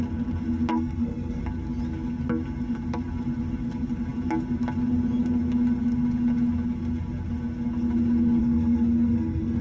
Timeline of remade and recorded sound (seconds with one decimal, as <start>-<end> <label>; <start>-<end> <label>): 0.0-0.7 recorded; 0.7-1.4 remade; 1.4-8.4 recorded; 8.4-9.6 remade